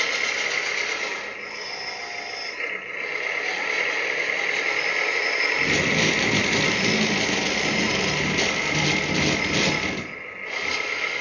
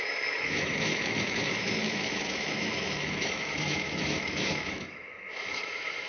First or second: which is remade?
second